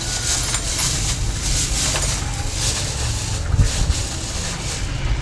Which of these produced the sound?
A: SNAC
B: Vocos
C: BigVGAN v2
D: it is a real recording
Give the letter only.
D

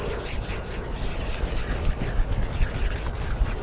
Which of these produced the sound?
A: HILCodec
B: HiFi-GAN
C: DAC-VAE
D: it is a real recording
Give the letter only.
D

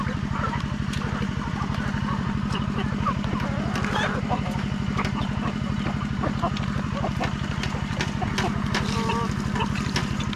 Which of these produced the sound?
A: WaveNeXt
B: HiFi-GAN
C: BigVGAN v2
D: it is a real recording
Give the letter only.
C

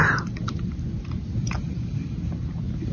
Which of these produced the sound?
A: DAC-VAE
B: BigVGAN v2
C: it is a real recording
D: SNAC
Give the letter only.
B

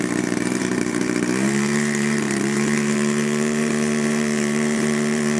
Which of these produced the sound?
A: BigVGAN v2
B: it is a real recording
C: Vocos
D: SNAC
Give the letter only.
A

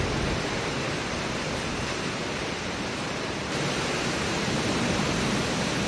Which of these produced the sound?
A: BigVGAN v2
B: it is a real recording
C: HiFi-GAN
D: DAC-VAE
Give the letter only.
A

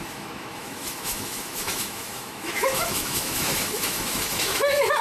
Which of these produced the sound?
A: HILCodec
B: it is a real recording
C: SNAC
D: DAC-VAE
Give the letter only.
D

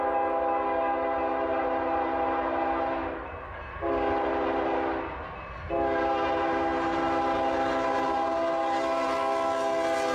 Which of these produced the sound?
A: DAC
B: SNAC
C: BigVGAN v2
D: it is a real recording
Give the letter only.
D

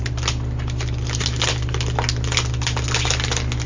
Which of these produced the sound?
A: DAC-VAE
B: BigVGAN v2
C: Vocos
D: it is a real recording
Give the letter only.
D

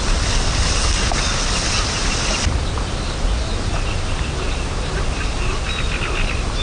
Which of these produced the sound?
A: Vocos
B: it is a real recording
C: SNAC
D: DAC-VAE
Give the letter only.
B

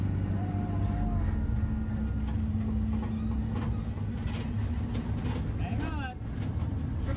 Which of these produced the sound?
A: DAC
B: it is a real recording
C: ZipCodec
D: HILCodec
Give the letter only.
B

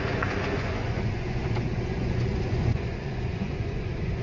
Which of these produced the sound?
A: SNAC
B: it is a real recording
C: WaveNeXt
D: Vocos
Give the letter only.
D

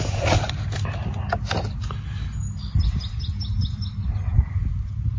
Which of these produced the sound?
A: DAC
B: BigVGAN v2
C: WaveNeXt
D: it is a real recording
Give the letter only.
D